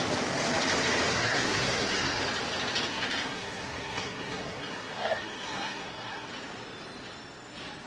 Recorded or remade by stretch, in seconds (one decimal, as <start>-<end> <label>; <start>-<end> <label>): 0.0-1.1 recorded; 1.1-2.2 remade; 2.2-2.9 recorded; 2.9-6.3 remade; 6.3-7.9 recorded